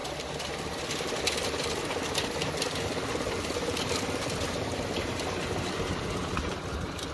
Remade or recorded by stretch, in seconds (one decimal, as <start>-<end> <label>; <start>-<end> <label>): 0.0-7.1 recorded

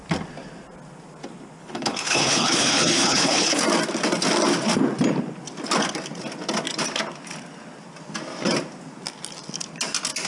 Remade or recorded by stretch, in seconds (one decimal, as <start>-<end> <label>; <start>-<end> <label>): 0.0-1.6 recorded; 1.6-3.6 remade; 3.6-10.3 recorded

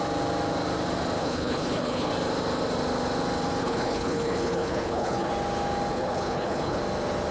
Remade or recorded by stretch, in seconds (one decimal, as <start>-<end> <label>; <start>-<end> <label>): 0.0-1.2 recorded; 1.2-2.1 remade; 2.1-3.6 recorded; 3.6-5.3 remade; 5.3-5.9 recorded; 5.9-6.8 remade; 6.8-7.3 recorded

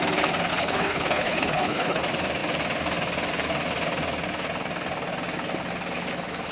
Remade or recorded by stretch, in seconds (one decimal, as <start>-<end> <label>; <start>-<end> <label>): 0.0-0.5 recorded; 0.5-2.0 remade; 2.0-6.5 recorded

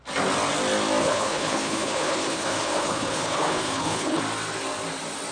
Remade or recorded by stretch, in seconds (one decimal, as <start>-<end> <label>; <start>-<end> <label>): 0.0-1.0 recorded; 1.0-4.2 remade; 4.2-5.3 recorded

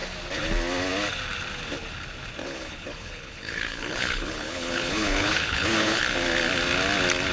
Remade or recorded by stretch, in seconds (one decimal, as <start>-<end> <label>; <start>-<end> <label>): 0.0-2.4 recorded; 2.4-6.0 remade; 6.0-7.3 recorded

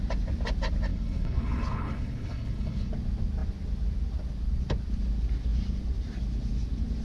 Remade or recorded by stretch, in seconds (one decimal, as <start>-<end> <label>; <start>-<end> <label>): 0.0-0.9 recorded; 0.9-2.9 remade; 2.9-7.0 recorded